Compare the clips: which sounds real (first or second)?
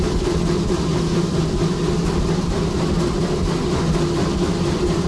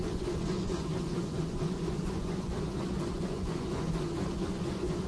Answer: first